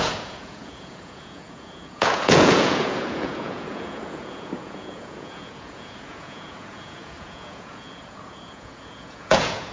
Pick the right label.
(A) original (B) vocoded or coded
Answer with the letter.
B